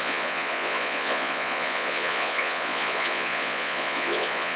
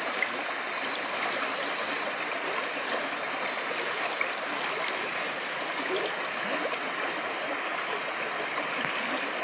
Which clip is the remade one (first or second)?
first